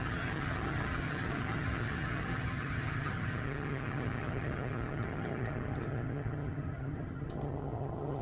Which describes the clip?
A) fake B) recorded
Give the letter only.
A